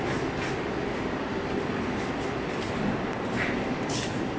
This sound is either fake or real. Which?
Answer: real